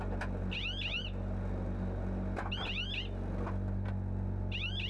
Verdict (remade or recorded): recorded